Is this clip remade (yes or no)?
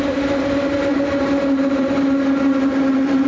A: no